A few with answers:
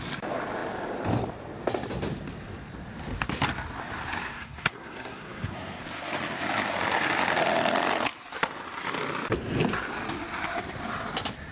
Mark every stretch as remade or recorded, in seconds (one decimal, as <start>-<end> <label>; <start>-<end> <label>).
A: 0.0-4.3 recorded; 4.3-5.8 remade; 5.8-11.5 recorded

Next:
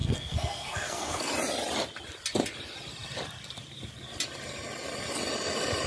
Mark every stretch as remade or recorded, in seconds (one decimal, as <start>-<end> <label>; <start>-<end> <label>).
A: 0.0-1.3 remade; 1.3-5.9 recorded

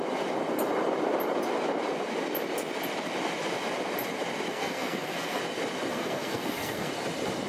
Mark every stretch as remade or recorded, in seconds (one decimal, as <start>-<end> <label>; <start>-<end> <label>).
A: 0.0-4.5 recorded; 4.5-5.4 remade; 5.4-5.9 recorded; 5.9-6.9 remade; 6.9-7.5 recorded

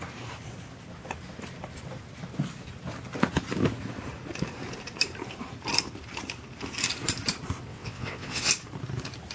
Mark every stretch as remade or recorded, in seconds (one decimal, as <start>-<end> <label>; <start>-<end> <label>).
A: 0.0-7.7 recorded; 7.7-8.5 remade; 8.5-9.3 recorded

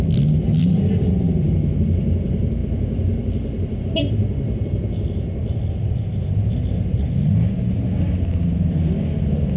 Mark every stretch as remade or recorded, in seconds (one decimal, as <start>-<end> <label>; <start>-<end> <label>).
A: 0.0-0.6 recorded; 0.6-1.5 remade; 1.5-9.6 recorded

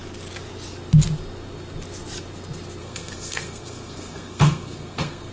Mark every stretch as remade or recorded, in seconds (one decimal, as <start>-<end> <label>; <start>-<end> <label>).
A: 0.0-2.8 recorded; 2.8-5.3 remade

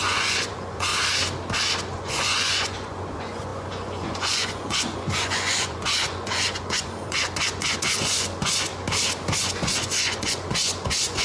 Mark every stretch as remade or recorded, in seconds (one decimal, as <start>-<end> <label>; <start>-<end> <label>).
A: 0.0-0.9 remade; 0.9-2.0 recorded; 2.0-8.7 remade; 8.7-9.4 recorded; 9.4-11.2 remade

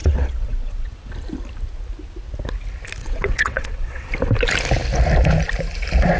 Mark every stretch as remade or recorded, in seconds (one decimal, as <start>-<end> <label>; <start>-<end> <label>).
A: 0.0-1.1 remade; 1.1-3.0 recorded; 3.0-4.1 remade; 4.1-6.2 recorded